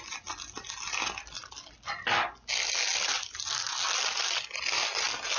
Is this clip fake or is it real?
real